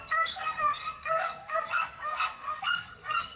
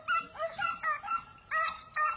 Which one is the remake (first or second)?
first